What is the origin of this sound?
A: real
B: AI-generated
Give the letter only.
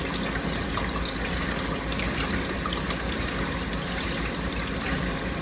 B